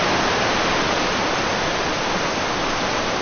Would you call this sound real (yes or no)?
yes